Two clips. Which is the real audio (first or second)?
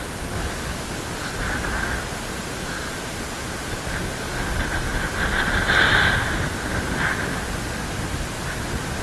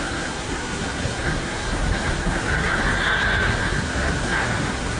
first